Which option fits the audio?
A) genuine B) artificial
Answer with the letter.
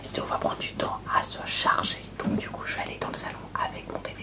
B